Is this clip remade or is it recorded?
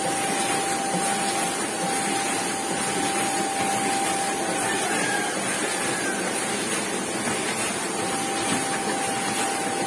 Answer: recorded